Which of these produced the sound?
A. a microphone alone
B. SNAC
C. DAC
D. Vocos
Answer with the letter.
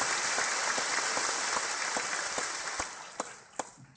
A